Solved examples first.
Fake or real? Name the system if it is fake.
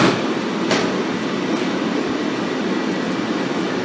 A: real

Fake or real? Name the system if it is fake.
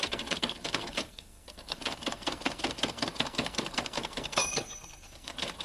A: fake, codec, SNAC